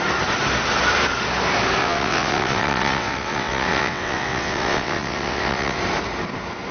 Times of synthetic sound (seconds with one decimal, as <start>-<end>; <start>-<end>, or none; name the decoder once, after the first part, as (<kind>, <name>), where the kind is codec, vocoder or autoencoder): 1.8-5.8 (vocoder, WaveNeXt)